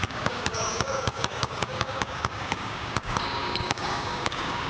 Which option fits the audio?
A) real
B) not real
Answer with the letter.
B